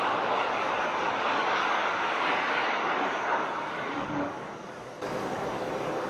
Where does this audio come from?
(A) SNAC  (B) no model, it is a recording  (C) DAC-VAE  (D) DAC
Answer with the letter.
D